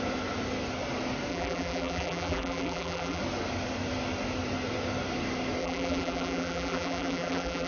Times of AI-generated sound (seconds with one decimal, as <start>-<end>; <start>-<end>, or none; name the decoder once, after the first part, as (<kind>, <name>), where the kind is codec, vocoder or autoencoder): 1.3-3.2 (vocoder, BigVGAN v2); 5.6-7.7

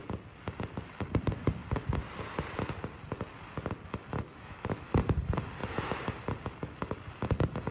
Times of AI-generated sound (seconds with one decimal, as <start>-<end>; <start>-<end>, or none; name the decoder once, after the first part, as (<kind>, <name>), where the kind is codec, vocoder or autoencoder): 4.3-4.9 (autoencoder, DAC-VAE)

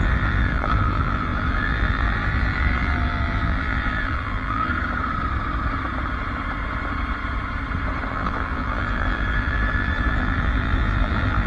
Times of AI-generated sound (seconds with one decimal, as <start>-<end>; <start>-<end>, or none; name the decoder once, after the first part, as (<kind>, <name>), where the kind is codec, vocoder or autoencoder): 0.0-4.7 (vocoder, BigVGAN v2); 8.1-11.5

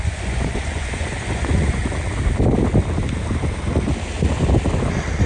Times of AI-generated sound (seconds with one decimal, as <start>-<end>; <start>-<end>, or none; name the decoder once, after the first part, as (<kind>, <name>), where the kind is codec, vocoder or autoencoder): 0.0-1.8 (vocoder, Vocos)

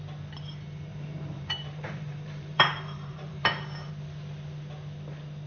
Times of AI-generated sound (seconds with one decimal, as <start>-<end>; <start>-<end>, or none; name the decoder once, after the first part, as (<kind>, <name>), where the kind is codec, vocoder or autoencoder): 0.9-3.9 (vocoder, BigVGAN v2)